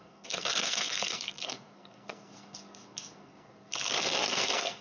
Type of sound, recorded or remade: remade